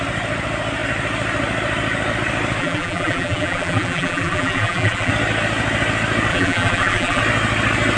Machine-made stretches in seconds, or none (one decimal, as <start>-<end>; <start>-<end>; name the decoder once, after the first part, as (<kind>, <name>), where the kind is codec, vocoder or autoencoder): 2.6-5.1 (vocoder, BigVGAN v2); 6.3-7.2